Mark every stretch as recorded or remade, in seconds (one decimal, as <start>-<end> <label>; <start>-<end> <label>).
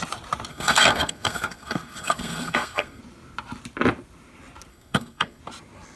0.0-0.5 recorded; 0.5-3.0 remade; 3.0-4.7 recorded; 4.7-5.4 remade; 5.4-6.0 recorded